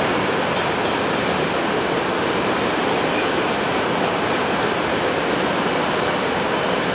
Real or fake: real